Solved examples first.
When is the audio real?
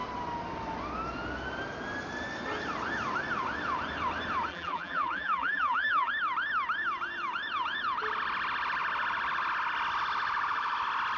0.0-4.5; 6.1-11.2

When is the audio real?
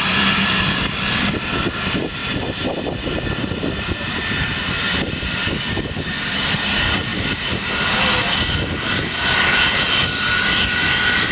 0.0-2.2; 5.5-11.3